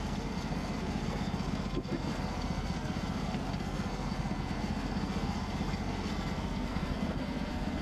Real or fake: fake